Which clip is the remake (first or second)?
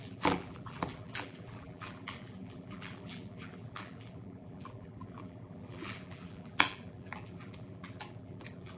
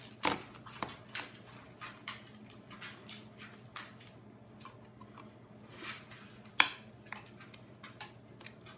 first